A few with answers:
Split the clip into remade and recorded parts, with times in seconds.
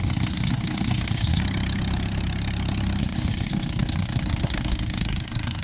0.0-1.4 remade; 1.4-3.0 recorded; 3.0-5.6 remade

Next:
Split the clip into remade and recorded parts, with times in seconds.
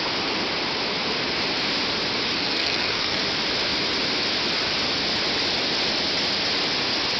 0.0-2.4 recorded; 2.4-3.2 remade; 3.2-7.2 recorded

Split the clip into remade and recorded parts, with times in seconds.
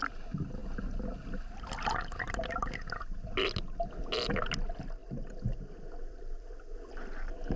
0.0-7.6 recorded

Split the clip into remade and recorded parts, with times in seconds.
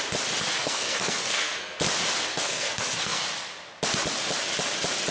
0.0-0.6 recorded; 0.6-1.8 remade; 1.8-2.3 recorded; 2.3-3.2 remade; 3.2-5.1 recorded